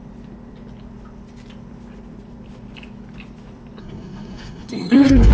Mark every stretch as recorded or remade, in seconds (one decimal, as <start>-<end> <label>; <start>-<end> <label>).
0.0-3.8 recorded; 3.8-5.3 remade